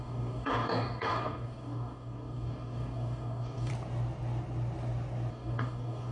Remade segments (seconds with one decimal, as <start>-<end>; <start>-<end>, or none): 0.0-3.7; 5.3-6.1